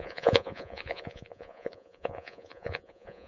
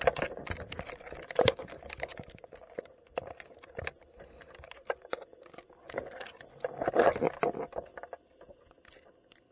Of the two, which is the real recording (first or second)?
second